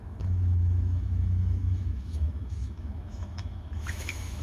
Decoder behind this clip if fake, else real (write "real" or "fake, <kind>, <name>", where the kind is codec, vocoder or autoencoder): fake, autoencoder, DAC-VAE